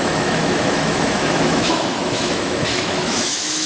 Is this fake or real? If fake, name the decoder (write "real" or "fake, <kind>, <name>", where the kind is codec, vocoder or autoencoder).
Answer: fake, autoencoder, DAC-VAE